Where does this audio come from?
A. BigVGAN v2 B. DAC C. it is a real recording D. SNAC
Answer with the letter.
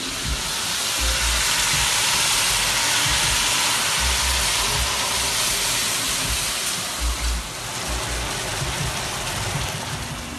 C